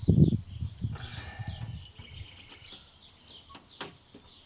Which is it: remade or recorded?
recorded